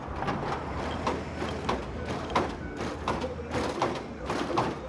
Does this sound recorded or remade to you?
recorded